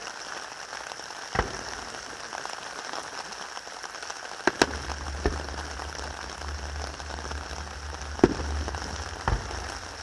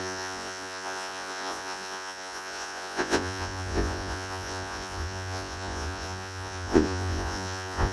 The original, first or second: first